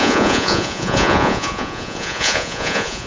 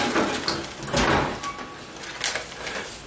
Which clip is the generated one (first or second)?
first